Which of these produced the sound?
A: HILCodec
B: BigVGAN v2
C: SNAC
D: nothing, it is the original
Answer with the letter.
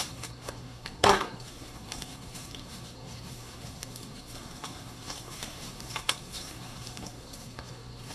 C